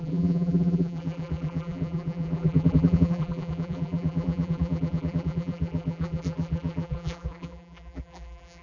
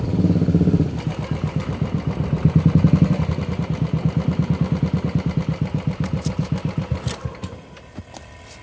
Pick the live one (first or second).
second